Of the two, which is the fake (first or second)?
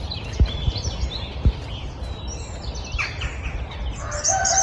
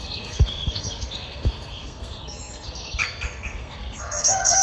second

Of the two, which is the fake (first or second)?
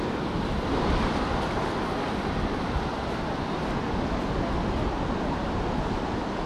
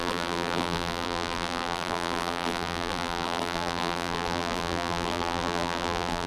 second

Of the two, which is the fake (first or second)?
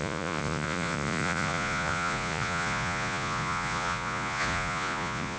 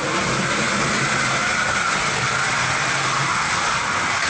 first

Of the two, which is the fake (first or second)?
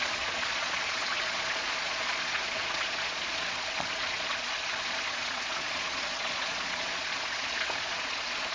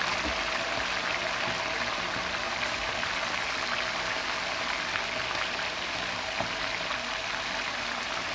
first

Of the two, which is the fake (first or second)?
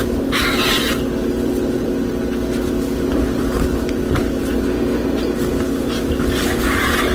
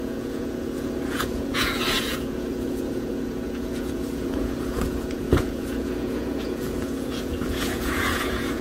second